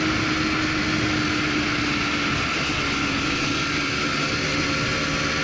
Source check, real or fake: real